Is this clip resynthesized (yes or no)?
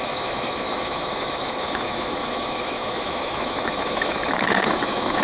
yes